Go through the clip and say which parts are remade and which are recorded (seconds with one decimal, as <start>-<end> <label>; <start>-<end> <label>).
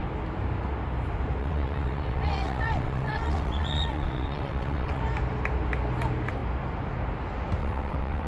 0.0-1.4 recorded; 1.4-5.0 remade; 5.0-7.6 recorded; 7.6-8.3 remade